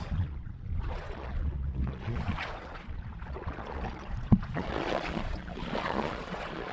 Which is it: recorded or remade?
remade